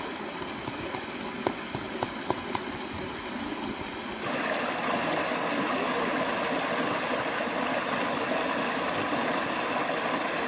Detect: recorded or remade recorded